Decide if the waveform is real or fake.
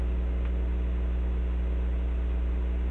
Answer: real